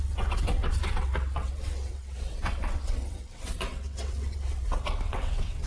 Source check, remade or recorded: remade